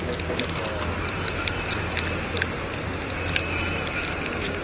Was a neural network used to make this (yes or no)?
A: no